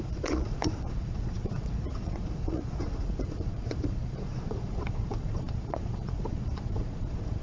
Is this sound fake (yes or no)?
yes